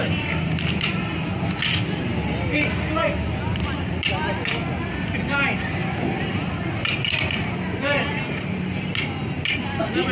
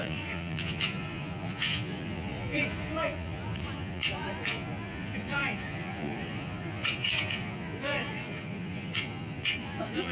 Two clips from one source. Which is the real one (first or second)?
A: first